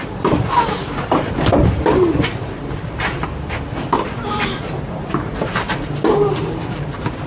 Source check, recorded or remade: remade